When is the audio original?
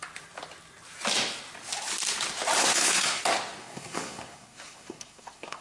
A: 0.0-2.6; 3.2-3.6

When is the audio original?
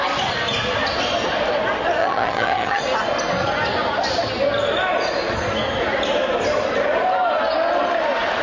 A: 0.0-2.0; 2.8-8.4